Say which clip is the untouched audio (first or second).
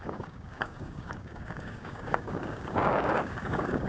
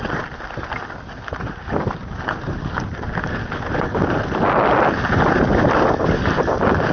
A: second